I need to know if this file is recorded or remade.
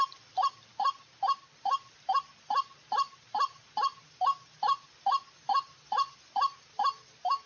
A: recorded